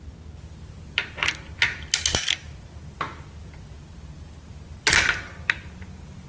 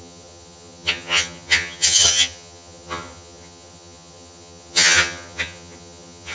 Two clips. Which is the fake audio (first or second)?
second